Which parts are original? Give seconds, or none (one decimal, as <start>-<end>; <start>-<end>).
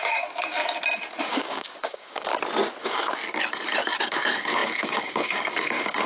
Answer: 0.6-1.2; 2.3-2.8; 3.2-4.0